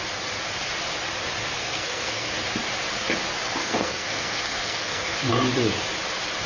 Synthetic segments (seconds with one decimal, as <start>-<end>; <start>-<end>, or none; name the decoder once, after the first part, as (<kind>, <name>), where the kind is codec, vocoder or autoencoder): 1.6-2.3 (codec, SNAC); 3.6-5.3